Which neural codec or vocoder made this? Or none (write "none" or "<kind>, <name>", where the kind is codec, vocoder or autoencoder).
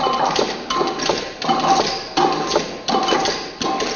none